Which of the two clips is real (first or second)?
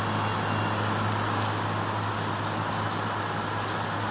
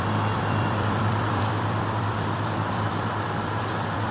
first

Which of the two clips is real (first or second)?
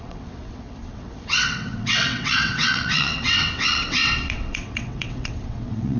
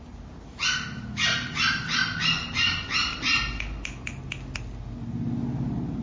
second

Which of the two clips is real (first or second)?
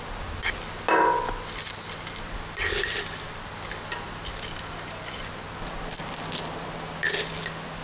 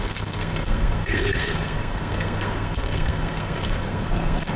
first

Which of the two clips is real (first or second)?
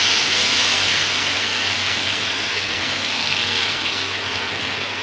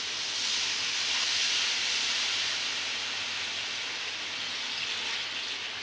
second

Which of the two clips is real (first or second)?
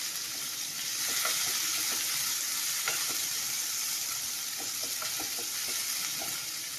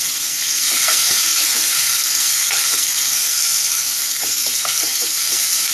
first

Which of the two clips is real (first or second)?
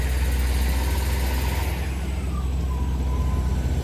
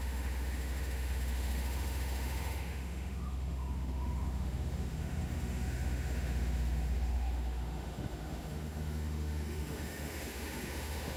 first